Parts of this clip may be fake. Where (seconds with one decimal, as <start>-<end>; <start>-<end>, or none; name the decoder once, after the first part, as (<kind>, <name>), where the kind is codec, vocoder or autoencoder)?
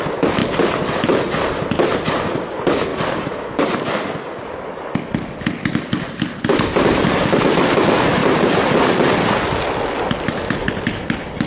none